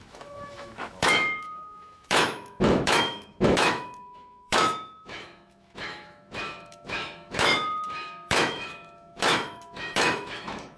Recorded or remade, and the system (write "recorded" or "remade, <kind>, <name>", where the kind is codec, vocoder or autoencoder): remade, autoencoder, DAC-VAE